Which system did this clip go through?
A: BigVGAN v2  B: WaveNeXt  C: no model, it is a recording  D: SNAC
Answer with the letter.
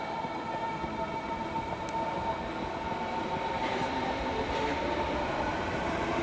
A